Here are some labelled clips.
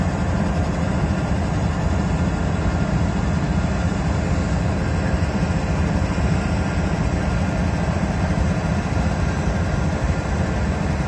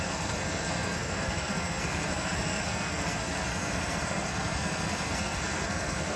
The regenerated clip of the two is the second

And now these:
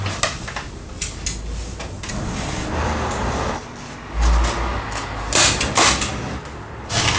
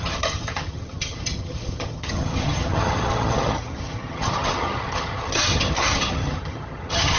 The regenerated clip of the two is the second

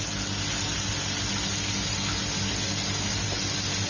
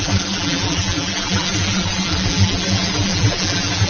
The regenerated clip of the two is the second